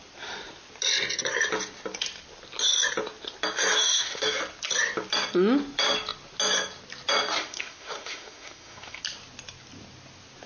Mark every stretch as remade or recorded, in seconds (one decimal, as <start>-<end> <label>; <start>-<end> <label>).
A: 0.0-3.8 recorded; 3.8-4.4 remade; 4.4-7.4 recorded; 7.4-9.0 remade; 9.0-10.5 recorded